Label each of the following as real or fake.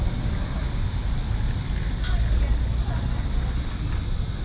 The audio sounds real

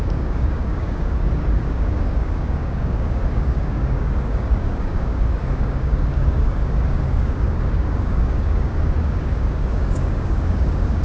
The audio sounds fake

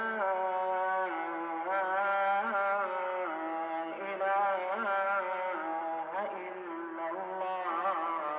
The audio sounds real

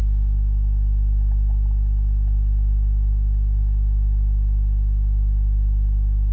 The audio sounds real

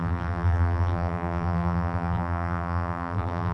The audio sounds fake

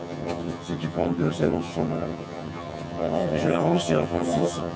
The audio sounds fake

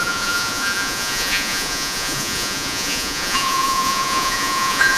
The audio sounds fake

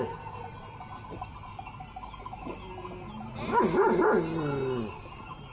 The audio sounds real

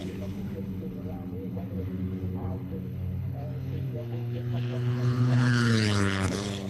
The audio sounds fake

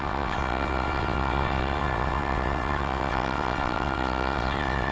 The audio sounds fake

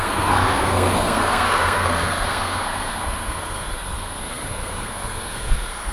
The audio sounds fake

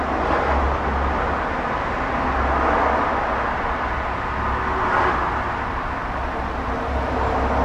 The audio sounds real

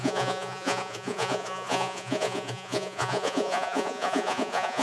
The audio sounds fake